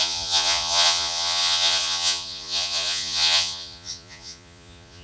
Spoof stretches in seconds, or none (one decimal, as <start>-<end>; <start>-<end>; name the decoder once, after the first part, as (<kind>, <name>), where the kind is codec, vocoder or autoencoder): 0.0-5.0 (vocoder, Vocos)